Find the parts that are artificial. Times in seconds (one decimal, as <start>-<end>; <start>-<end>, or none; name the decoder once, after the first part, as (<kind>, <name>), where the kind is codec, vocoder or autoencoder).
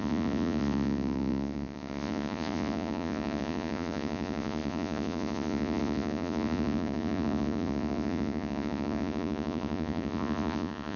0.0-11.0 (vocoder, Vocos)